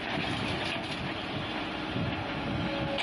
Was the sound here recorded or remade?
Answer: recorded